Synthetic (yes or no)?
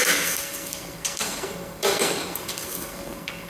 yes